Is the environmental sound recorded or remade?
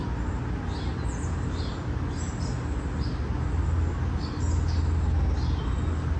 recorded